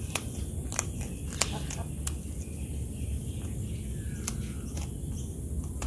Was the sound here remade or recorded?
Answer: recorded